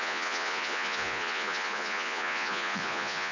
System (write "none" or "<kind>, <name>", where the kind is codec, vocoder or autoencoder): vocoder, Vocos